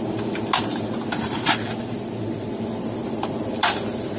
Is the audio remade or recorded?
remade